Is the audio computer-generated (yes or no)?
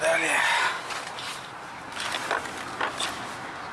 no